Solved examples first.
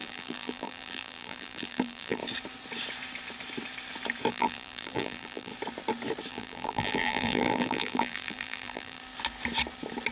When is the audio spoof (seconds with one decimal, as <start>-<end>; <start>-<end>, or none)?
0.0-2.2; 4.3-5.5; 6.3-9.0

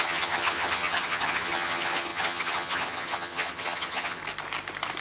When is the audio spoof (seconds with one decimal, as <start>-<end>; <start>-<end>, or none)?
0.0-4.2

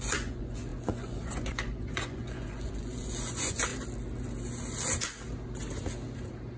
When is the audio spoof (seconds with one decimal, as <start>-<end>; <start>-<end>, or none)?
0.0-3.7

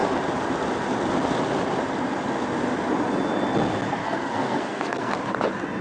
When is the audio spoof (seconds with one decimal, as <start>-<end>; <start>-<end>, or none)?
4.0-5.1

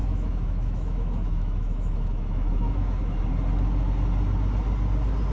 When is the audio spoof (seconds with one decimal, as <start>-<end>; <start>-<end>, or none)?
0.0-3.2

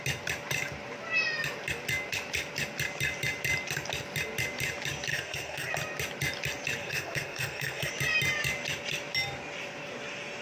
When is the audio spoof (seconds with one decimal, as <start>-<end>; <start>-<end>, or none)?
5.1-5.7; 6.8-7.9

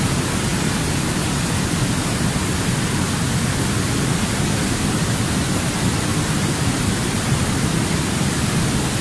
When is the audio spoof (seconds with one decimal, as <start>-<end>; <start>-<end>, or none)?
none